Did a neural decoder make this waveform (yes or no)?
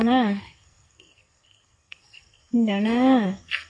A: yes